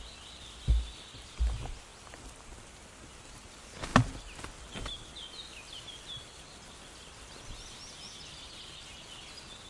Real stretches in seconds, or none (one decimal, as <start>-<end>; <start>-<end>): 0.0-9.7